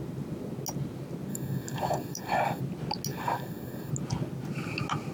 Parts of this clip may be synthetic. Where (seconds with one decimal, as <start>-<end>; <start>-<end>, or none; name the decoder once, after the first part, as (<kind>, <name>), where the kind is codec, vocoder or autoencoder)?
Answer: 1.3-2.6 (codec, DAC); 3.1-3.9